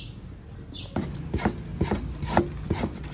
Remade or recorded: recorded